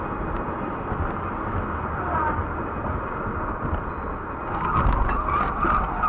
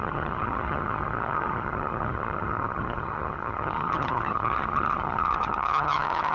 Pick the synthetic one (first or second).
second